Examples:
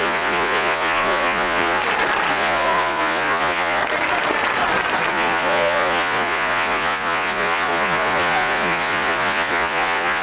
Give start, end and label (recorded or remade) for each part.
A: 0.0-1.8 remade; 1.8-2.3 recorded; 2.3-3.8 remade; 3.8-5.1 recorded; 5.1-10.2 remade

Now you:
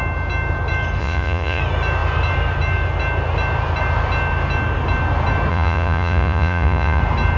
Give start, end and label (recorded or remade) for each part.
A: 0.0-1.0 recorded; 1.0-1.6 remade; 1.6-5.5 recorded; 5.5-7.0 remade; 7.0-7.4 recorded

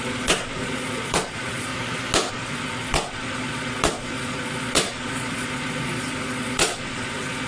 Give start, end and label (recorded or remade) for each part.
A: 0.0-1.7 remade; 1.7-2.3 recorded; 2.3-7.5 remade

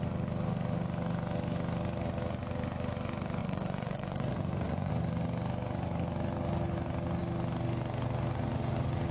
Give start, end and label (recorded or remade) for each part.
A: 0.0-3.4 recorded; 3.4-4.9 remade; 4.9-9.1 recorded

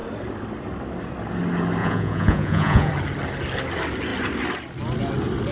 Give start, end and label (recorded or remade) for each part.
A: 0.0-1.8 recorded; 1.8-2.9 remade; 2.9-5.5 recorded

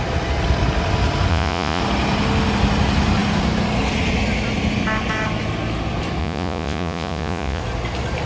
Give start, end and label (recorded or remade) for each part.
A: 0.0-1.3 recorded; 1.3-1.8 remade; 1.8-6.2 recorded; 6.2-7.6 remade; 7.6-8.3 recorded

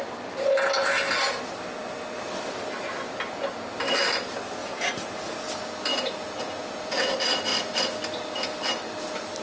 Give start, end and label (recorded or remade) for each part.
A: 0.0-4.6 recorded; 4.6-5.3 remade; 5.3-5.9 recorded; 5.9-7.1 remade; 7.1-9.4 recorded

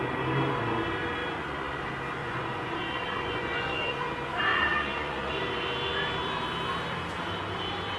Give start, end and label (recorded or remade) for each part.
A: 0.0-1.2 recorded; 1.2-1.8 remade; 1.8-2.2 recorded; 2.2-4.0 remade; 4.0-4.5 recorded; 4.5-5.4 remade; 5.4-8.0 recorded